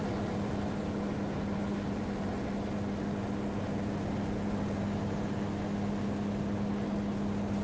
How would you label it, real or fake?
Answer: real